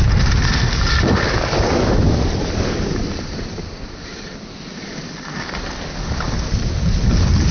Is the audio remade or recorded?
recorded